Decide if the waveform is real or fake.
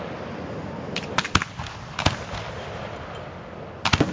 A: real